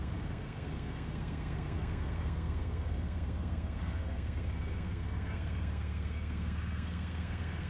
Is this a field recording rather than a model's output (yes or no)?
no